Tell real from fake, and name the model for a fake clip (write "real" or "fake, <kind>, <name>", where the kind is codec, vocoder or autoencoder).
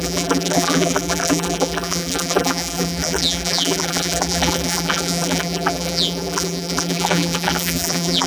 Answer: fake, vocoder, BigVGAN v2